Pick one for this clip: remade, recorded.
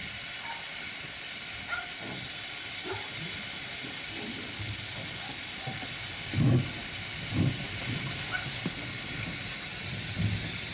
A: recorded